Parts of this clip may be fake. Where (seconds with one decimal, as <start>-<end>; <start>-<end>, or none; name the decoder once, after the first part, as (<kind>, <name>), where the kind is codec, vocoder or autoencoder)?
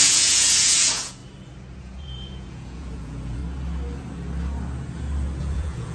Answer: 0.0-1.2 (vocoder, Vocos); 1.8-3.4; 5.4-5.9